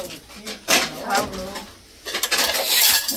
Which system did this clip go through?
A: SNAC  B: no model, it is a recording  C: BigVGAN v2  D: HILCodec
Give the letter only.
B